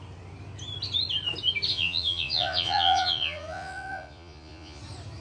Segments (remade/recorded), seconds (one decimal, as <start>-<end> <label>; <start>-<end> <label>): 0.0-1.7 recorded; 1.7-4.8 remade; 4.8-5.2 recorded